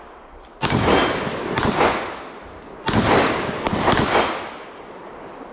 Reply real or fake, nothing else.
real